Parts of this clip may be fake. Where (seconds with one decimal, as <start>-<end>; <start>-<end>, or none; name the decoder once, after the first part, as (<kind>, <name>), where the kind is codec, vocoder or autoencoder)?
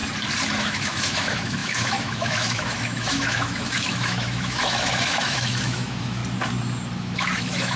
0.6-6.2 (autoencoder, DAC-VAE); 7.0-7.8